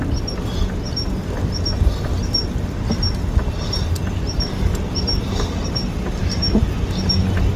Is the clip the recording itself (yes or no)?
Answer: yes